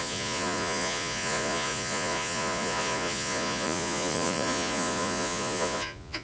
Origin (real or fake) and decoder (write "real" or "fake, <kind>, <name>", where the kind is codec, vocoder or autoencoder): fake, vocoder, Vocos